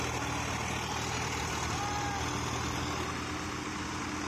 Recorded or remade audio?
recorded